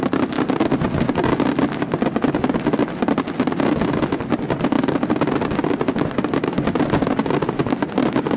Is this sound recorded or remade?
recorded